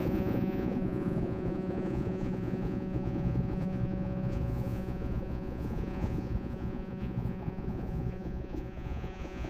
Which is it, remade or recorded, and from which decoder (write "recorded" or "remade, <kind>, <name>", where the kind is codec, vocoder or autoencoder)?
remade, vocoder, Vocos